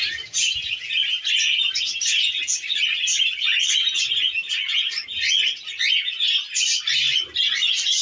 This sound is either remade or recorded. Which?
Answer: recorded